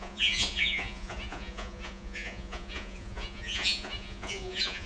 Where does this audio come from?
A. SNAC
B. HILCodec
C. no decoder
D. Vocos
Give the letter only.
D